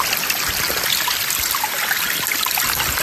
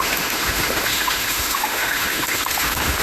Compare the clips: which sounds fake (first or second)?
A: second